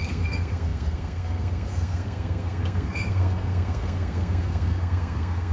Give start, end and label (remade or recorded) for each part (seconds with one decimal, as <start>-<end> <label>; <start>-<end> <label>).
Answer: 0.0-5.5 remade

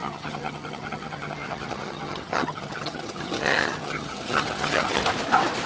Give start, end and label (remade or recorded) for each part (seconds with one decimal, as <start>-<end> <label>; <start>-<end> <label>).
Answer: 0.0-5.0 remade; 5.0-5.7 recorded

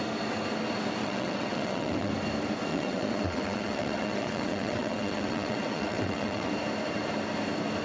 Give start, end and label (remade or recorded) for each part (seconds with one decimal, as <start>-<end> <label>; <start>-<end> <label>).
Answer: 0.0-1.0 recorded; 1.0-2.1 remade; 2.1-2.7 recorded; 2.7-6.5 remade; 6.5-7.8 recorded

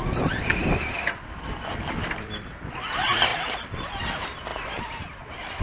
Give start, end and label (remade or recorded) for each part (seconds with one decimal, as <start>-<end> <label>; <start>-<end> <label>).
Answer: 0.0-0.6 remade; 0.6-1.5 recorded; 1.5-3.3 remade; 3.3-4.0 recorded; 4.0-5.6 remade

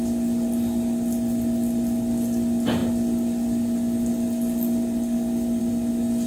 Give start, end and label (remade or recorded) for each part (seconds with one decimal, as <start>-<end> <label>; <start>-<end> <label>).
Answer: 0.0-6.3 recorded

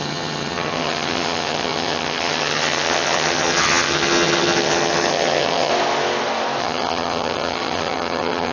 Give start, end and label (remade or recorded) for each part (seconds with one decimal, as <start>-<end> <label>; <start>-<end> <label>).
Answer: 0.0-5.7 remade; 5.7-6.6 recorded; 6.6-8.5 remade

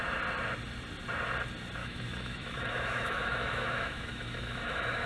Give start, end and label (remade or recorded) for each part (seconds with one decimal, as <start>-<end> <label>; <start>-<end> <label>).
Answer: 0.0-1.8 recorded; 1.8-5.1 remade